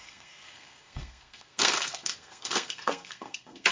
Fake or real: fake